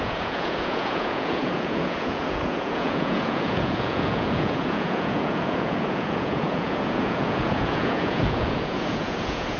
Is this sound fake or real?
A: fake